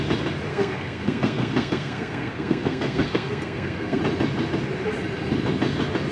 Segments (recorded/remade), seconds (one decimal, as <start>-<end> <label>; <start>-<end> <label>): 0.0-0.5 recorded; 0.5-4.0 remade; 4.0-6.1 recorded